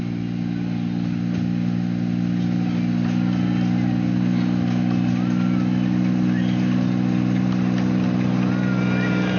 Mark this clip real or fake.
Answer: real